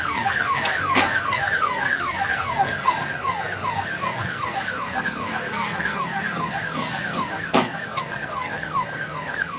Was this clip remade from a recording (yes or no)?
yes